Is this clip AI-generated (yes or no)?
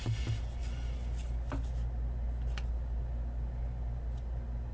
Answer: no